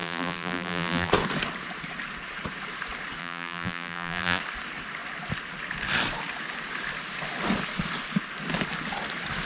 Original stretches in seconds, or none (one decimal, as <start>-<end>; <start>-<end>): 1.1-3.2; 4.4-9.5